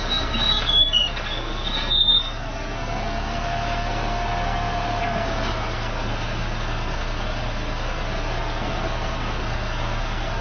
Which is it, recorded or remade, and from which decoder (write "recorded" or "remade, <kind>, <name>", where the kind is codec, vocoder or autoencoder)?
remade, codec, SNAC